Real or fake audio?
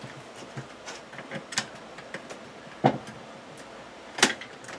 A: real